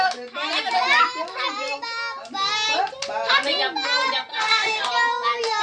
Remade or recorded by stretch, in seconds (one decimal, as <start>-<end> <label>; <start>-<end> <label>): 0.0-4.3 recorded; 4.3-4.9 remade; 4.9-5.6 recorded